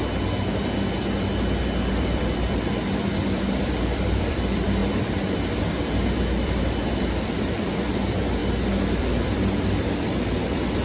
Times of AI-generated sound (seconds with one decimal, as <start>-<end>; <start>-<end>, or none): 1.9-8.4; 9.0-10.8